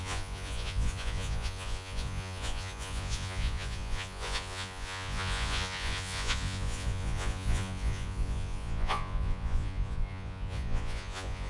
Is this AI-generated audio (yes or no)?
yes